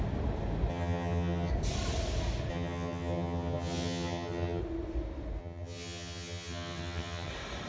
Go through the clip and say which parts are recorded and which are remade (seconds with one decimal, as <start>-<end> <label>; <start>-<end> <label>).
0.0-0.7 recorded; 0.7-1.5 remade; 1.5-2.5 recorded; 2.5-4.6 remade; 4.6-5.4 recorded; 5.4-7.3 remade; 7.3-7.7 recorded